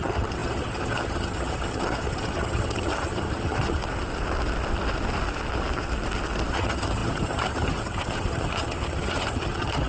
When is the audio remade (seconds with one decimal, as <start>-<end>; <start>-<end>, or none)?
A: 0.0-3.8; 6.5-9.9